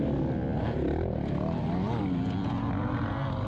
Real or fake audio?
real